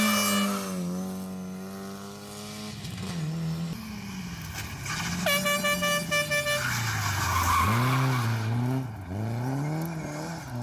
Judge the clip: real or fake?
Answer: real